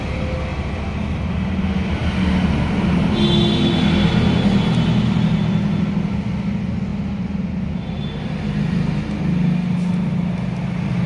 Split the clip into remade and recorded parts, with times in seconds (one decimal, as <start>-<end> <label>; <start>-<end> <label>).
0.0-11.1 recorded